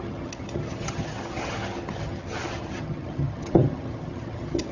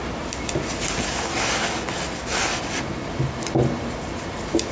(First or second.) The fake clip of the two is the first